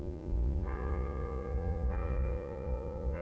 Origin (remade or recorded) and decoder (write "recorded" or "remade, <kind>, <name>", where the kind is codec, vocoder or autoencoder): remade, vocoder, Vocos